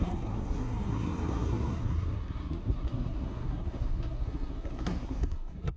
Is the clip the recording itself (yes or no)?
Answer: no